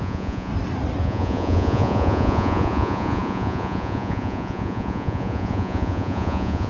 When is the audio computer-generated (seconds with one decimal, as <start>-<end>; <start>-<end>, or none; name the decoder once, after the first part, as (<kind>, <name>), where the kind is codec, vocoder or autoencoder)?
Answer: 0.0-0.5 (vocoder, Vocos); 1.0-6.7